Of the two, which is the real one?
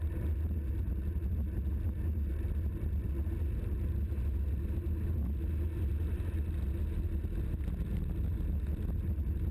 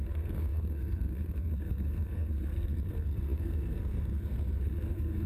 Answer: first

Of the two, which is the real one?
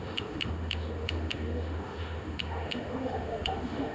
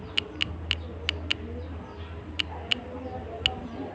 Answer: second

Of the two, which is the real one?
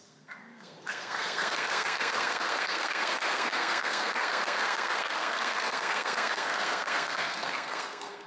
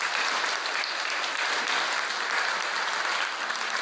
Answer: second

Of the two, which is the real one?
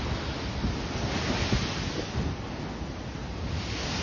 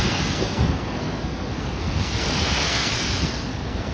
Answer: first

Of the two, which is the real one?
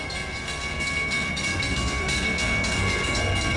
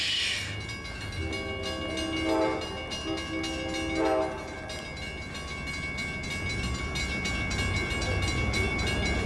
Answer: second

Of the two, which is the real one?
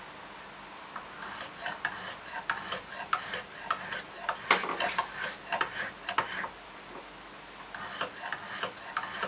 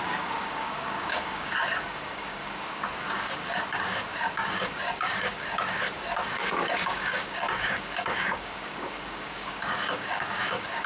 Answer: first